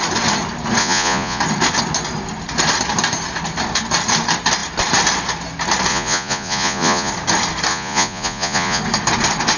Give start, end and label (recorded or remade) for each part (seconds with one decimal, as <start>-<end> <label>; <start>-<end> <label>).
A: 0.0-0.8 recorded; 0.8-1.4 remade; 1.4-5.9 recorded; 5.9-7.1 remade; 7.1-7.7 recorded; 7.7-8.8 remade; 8.8-9.6 recorded